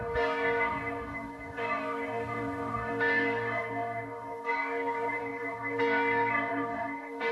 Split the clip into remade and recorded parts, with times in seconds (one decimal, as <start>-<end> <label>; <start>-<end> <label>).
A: 0.0-7.3 remade